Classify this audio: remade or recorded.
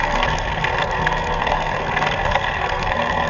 remade